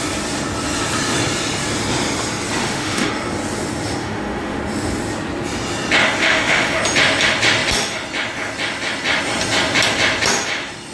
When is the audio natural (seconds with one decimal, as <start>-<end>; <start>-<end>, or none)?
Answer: 0.0-2.6; 3.1-4.0; 4.6-6.2; 6.8-10.9